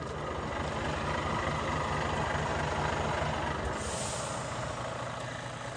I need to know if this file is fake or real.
real